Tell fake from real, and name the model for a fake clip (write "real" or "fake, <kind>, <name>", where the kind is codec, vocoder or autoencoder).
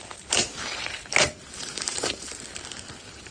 fake, vocoder, BigVGAN v2